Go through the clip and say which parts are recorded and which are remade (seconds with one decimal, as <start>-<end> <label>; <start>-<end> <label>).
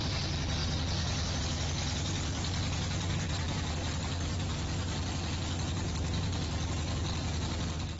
0.0-8.0 recorded